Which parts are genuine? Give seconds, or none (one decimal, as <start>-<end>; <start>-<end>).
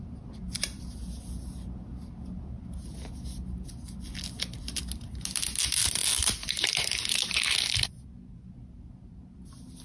0.0-9.8